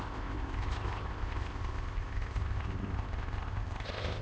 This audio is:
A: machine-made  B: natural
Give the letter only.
A